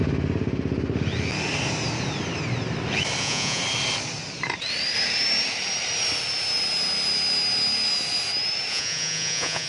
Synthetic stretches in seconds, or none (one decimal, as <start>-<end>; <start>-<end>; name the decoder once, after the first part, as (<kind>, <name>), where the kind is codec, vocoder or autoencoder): 3.2-3.6 (vocoder, Vocos); 8.7-9.7